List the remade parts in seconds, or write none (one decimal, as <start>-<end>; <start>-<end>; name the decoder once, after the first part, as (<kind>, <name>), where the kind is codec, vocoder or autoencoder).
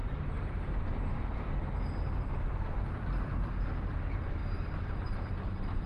none